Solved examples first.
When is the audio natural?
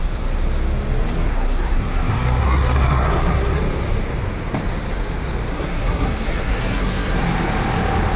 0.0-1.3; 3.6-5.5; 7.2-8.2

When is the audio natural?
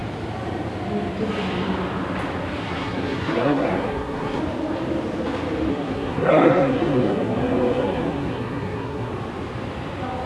0.0-2.6; 4.4-5.7; 9.1-10.3